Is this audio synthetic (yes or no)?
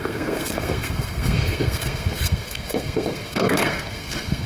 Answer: yes